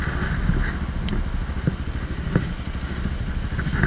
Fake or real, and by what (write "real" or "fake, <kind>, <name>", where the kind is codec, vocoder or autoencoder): real